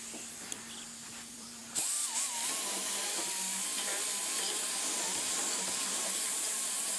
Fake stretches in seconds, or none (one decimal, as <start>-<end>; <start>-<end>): 0.0-1.6; 5.8-7.0